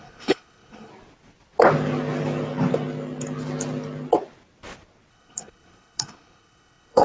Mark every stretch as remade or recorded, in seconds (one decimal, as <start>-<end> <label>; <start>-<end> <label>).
0.0-0.9 remade; 0.9-5.1 recorded; 5.1-7.0 remade